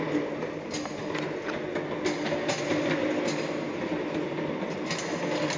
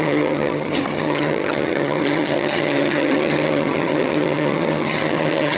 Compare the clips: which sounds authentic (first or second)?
first